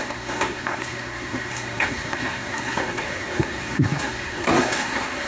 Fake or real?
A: fake